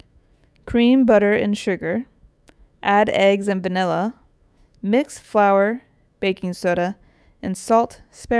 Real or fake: fake